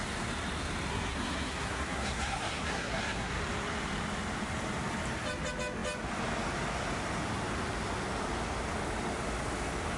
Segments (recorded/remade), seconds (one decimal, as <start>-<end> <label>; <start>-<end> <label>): 0.0-0.9 recorded; 0.9-3.4 remade; 3.4-10.0 recorded